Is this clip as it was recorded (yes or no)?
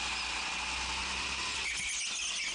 yes